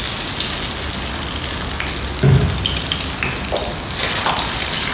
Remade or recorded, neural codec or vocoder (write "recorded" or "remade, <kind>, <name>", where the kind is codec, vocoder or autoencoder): recorded